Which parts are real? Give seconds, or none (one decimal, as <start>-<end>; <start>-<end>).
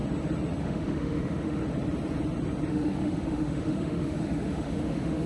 0.0-0.6; 1.6-2.7